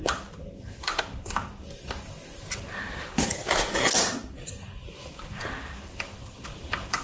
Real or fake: real